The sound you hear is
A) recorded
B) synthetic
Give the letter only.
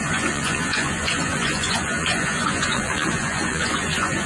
B